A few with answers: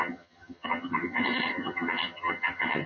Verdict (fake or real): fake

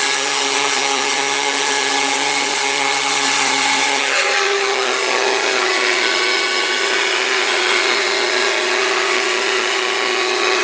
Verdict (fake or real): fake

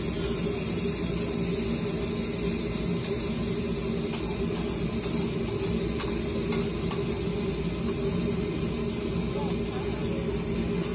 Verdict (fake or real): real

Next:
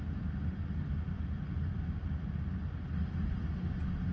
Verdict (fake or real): real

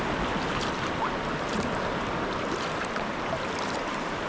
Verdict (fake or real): real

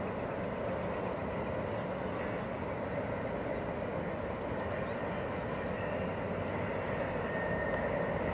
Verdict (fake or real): real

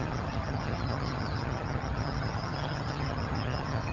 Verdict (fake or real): fake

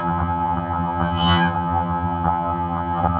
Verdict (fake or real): fake